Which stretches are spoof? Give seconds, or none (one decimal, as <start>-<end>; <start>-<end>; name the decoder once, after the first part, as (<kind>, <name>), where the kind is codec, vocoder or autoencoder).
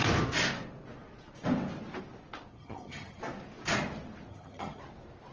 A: 2.5-3.2 (vocoder, HiFi-GAN); 4.3-4.8